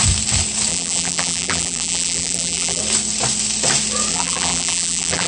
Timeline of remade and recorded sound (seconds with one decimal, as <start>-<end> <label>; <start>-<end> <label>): 0.0-0.7 recorded; 0.7-2.8 remade; 2.8-4.1 recorded; 4.1-5.3 remade